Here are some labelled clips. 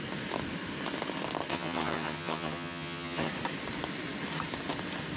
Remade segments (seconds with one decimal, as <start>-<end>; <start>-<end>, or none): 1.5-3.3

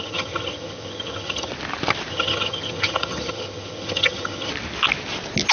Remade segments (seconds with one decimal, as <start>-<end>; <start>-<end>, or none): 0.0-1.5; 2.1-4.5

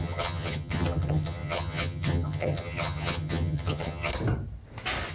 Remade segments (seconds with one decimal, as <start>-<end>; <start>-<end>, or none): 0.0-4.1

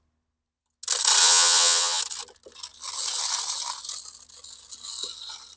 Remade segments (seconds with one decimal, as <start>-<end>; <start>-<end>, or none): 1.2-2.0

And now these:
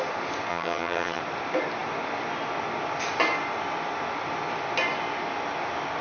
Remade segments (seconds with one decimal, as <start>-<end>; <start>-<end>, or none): 0.5-1.2

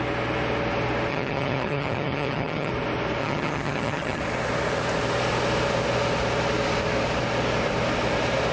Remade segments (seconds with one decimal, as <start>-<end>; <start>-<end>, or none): 1.1-2.7; 3.2-4.2

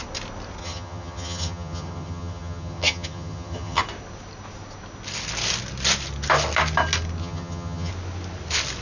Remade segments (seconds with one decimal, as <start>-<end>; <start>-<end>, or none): 0.6-3.8; 7.2-7.9